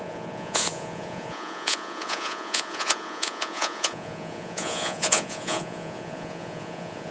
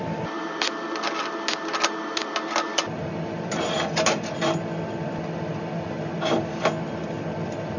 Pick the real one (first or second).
second